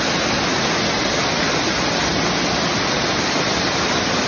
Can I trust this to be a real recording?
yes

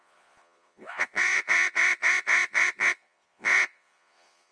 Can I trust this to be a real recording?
no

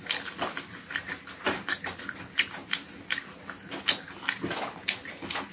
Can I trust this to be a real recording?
yes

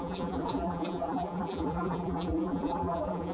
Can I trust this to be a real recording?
no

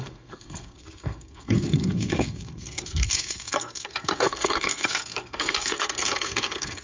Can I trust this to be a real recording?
no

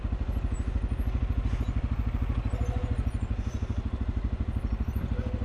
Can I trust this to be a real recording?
yes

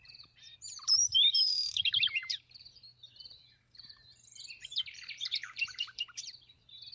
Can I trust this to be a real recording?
no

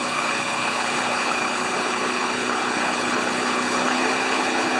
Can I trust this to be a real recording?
no